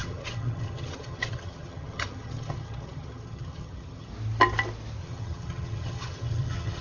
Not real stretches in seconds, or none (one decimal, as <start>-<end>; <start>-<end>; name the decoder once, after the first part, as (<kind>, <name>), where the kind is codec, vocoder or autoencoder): 0.0-4.1 (vocoder, HiFi-GAN); 5.0-6.8